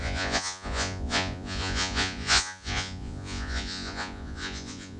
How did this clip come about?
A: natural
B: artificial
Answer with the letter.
B